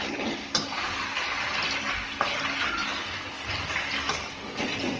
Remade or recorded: recorded